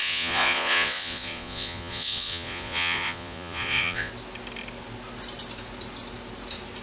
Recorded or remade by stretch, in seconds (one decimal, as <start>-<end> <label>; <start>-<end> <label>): 0.0-4.1 remade; 4.1-6.8 recorded